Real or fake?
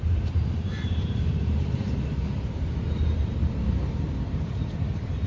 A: fake